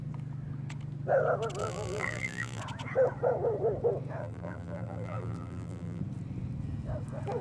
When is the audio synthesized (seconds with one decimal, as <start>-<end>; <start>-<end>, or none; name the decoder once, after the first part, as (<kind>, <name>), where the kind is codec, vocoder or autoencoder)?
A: 1.6-2.6 (vocoder, BigVGAN v2); 4.2-6.0